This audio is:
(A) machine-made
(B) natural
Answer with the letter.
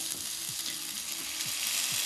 B